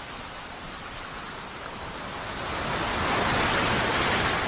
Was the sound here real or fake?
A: real